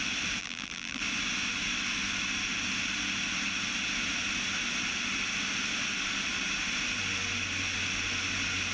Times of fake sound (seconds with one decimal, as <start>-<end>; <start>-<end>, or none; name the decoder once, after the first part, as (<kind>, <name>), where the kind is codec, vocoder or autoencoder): 0.4-1.0 (vocoder, BigVGAN v2)